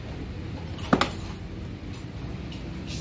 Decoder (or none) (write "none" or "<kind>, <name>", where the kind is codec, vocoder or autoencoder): none